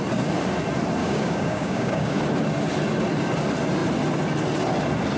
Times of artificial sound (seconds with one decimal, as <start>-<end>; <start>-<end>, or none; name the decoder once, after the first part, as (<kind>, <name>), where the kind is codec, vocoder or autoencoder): 1.0-2.2 (codec, DAC)